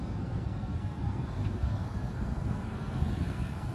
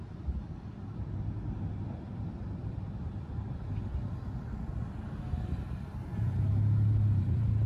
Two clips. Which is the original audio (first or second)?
second